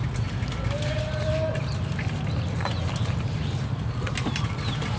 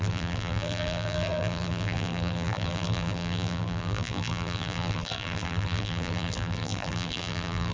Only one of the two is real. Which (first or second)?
first